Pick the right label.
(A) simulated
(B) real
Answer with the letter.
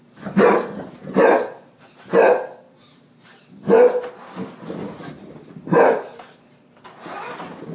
B